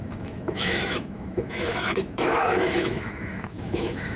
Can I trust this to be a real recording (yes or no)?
no